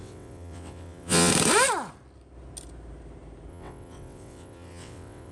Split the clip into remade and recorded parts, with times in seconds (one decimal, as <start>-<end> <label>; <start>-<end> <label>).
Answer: 0.0-1.3 remade; 1.3-3.5 recorded; 3.5-5.3 remade